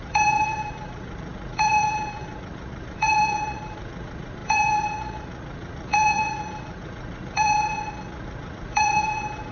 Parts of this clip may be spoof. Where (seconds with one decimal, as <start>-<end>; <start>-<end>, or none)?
0.0-9.5